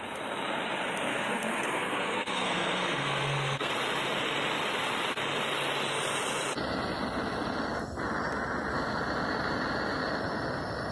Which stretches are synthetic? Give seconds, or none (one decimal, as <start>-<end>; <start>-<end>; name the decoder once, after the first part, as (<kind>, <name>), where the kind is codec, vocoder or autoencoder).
1.1-3.7 (codec, SNAC)